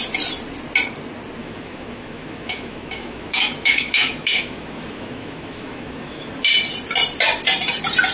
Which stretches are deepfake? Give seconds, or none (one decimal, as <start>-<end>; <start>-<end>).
1.4-6.3